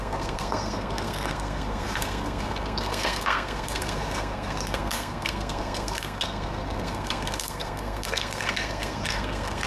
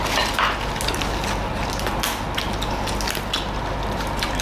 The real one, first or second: second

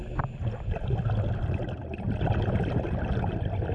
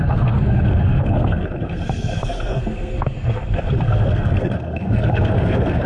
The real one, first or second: first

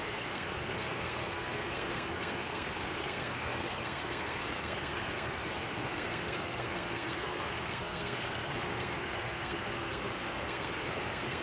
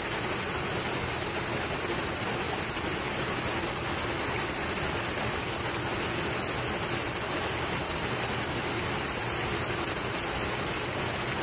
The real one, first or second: second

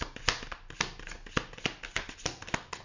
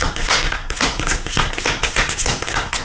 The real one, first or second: first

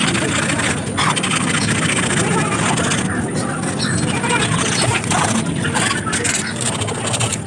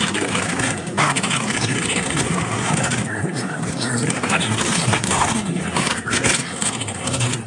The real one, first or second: first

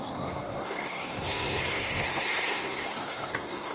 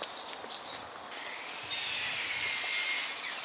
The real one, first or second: second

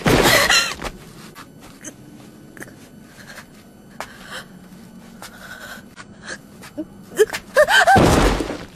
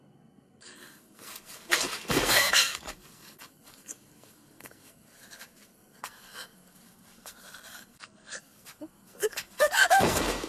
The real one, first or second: first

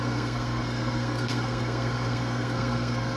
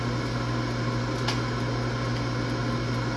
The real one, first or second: second